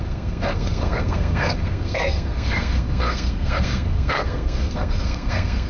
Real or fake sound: fake